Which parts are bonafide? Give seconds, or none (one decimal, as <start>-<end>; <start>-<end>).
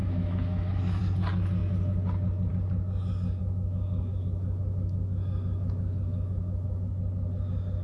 1.0-3.4; 6.9-7.8